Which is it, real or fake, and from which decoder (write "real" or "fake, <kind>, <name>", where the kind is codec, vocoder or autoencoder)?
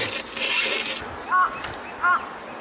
real